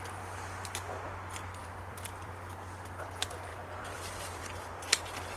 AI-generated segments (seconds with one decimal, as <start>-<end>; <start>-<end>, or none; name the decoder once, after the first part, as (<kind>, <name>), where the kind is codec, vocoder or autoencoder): 1.6-2.3 (vocoder, BigVGAN v2); 3.5-4.4